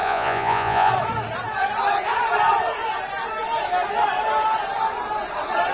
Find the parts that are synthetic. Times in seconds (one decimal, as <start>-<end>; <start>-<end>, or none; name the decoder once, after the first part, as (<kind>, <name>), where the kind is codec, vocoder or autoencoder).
0.0-0.9 (vocoder, Vocos)